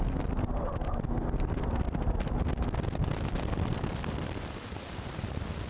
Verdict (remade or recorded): recorded